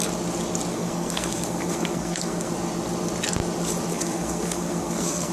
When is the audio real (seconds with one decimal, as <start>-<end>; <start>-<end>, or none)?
0.0-0.7; 2.5-3.9

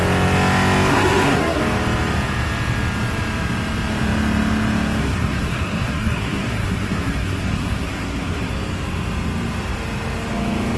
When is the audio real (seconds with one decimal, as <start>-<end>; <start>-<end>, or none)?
0.0-0.9; 1.6-5.0; 8.5-10.8

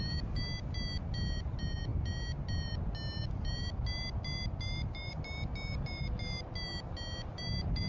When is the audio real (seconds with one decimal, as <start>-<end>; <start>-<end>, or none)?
0.0-7.9

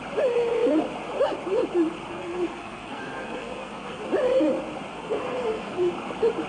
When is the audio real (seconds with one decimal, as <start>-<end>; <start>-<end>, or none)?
0.0-2.1; 4.0-4.9; 5.9-6.5

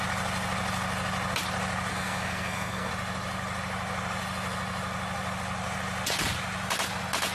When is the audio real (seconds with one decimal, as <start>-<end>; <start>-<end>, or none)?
0.0-1.9; 2.9-7.3

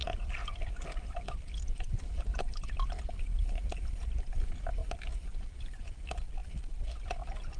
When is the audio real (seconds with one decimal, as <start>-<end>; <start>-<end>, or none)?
0.0-7.6

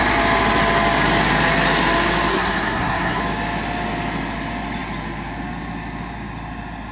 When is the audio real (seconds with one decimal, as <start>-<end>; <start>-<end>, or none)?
0.0-2.3; 3.2-6.9

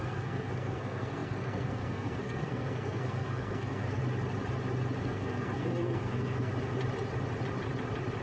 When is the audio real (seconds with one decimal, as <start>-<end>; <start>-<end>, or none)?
4.0-5.0; 6.5-8.2